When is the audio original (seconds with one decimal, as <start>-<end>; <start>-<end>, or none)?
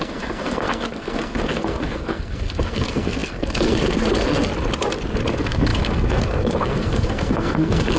4.5-5.3